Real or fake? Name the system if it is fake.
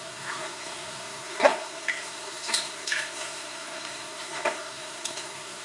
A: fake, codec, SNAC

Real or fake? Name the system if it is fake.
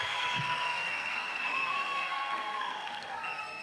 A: fake, codec, SNAC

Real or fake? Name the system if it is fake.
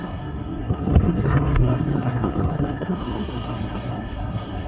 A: fake, codec, SNAC